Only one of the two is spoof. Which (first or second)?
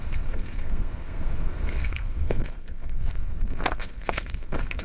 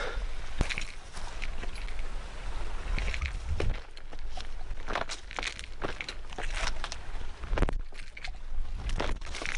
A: first